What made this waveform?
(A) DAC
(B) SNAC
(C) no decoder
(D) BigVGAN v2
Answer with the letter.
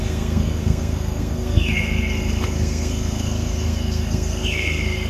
B